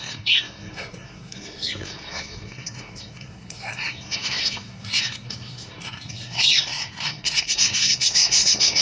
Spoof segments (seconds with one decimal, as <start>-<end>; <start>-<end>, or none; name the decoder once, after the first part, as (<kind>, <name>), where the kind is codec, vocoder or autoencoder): 0.0-8.8 (codec, SNAC)